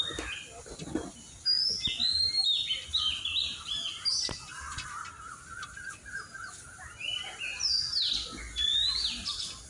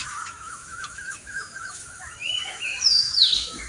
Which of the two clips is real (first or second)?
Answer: first